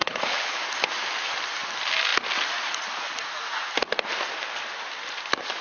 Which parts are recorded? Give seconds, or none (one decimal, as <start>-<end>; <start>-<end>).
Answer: 0.6-5.6

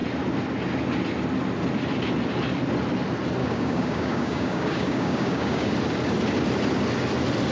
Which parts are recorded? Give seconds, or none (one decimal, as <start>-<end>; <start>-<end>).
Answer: 0.0-3.4; 5.7-7.5

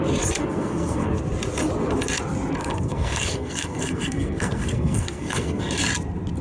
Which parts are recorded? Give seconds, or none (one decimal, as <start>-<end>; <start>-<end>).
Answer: 0.0-0.4; 1.1-2.6; 5.6-6.4

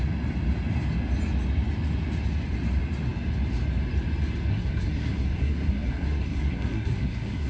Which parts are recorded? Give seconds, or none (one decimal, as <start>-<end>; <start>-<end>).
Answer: 0.0-4.5

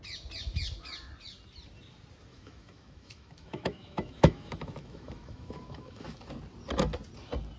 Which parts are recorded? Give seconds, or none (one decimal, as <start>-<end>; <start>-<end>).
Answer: 0.0-2.3; 6.3-7.6

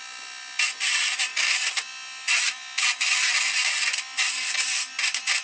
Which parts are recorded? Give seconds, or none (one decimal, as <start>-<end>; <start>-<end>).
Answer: 0.0-5.4

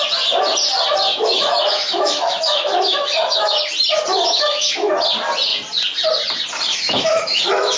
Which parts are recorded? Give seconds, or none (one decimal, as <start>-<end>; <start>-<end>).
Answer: 0.0-1.1; 3.6-4.1; 4.9-6.7

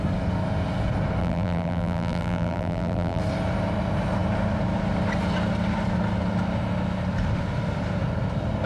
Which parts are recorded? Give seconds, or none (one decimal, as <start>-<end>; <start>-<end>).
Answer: 0.0-1.2; 3.2-8.7